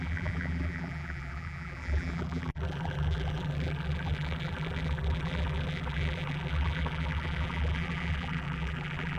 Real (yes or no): no